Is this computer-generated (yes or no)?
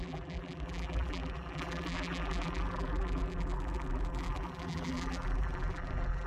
yes